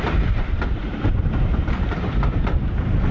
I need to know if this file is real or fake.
real